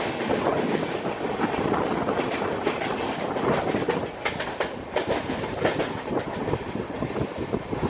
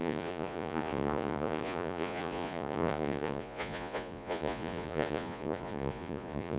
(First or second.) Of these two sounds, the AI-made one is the second